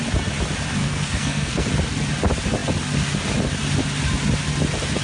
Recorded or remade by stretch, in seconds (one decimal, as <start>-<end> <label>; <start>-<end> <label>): 0.0-0.8 recorded; 0.8-1.7 remade; 1.7-5.0 recorded

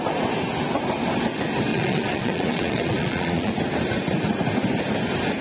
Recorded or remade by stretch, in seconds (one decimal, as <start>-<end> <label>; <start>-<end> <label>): 0.0-1.7 recorded; 1.7-3.5 remade; 3.5-5.4 recorded